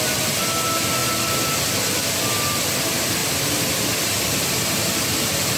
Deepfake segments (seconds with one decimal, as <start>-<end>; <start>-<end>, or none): none